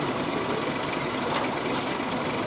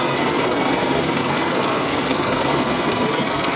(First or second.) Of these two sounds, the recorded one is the first